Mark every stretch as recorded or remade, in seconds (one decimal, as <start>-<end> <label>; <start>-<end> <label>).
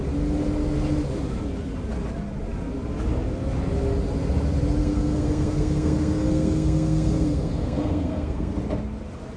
0.0-4.8 recorded; 4.8-8.5 remade; 8.5-9.4 recorded